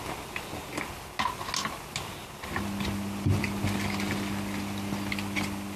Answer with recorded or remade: recorded